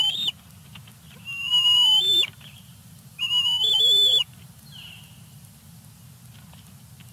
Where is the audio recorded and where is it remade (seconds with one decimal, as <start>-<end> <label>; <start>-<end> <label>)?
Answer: 0.0-1.5 recorded; 1.5-5.8 remade; 5.8-7.1 recorded